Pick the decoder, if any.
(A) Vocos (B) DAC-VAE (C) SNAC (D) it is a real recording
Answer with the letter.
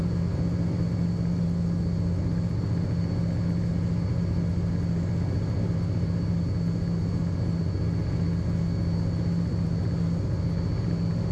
D